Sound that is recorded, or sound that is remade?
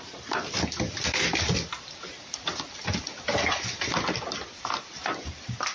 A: recorded